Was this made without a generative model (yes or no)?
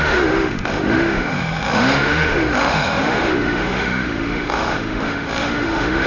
no